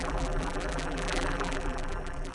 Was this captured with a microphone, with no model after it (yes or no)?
no